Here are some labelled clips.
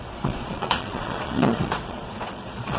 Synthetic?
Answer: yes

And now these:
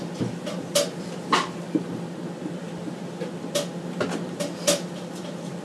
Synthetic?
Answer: no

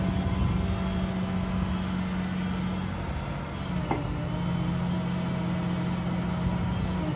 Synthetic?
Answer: no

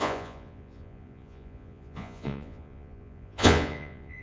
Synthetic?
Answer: yes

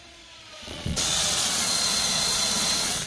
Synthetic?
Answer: yes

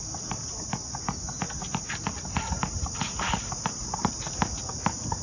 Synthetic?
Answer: no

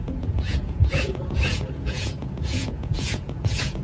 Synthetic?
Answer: yes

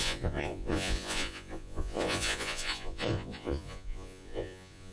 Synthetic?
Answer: yes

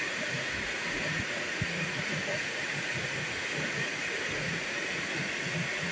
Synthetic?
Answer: yes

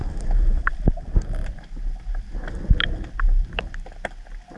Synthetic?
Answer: no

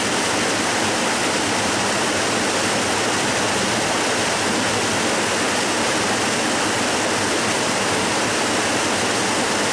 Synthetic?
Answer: no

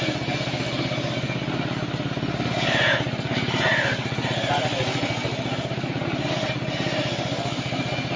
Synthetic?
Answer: no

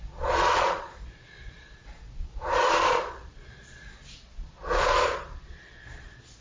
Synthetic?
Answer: yes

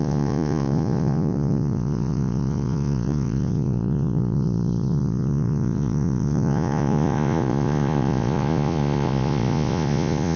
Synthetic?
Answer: yes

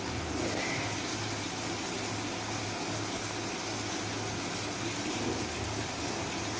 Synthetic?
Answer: no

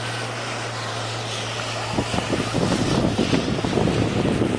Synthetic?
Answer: no